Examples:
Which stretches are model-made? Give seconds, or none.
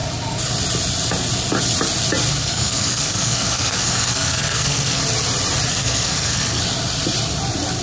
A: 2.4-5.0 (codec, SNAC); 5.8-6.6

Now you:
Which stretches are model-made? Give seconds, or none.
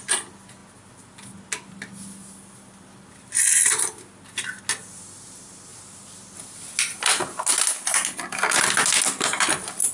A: none